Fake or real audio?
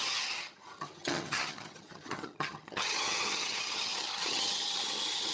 fake